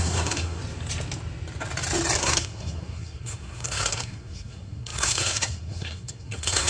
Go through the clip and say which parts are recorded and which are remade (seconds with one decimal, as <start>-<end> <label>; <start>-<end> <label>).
0.0-0.6 remade; 0.6-2.2 recorded; 2.2-6.7 remade